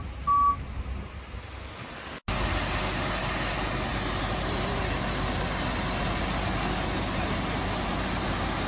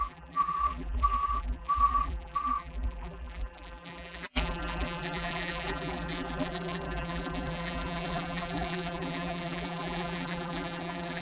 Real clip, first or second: first